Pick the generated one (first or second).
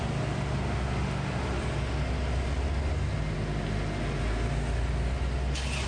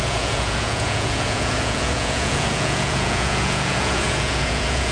second